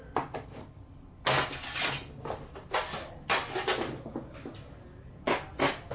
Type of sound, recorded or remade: recorded